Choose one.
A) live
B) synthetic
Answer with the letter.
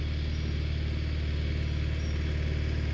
A